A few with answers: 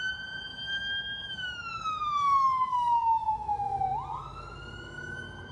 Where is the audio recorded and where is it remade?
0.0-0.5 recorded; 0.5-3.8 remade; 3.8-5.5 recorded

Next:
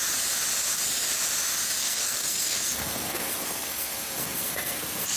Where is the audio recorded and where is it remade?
0.0-1.8 recorded; 1.8-5.2 remade

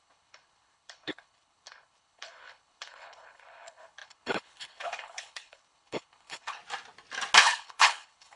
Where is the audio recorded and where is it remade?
0.0-6.6 remade; 6.6-7.4 recorded; 7.4-8.4 remade

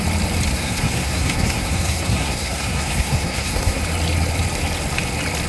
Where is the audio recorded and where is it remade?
0.0-0.5 recorded; 0.5-3.8 remade; 3.8-5.5 recorded

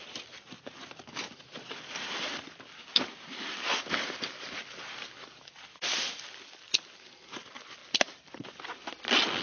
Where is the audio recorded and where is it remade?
0.0-9.4 recorded

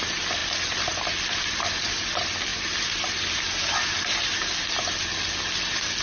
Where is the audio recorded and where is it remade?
0.0-6.0 recorded

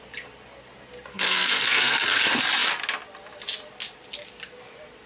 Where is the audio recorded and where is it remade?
0.0-1.1 recorded; 1.1-2.2 remade; 2.2-5.1 recorded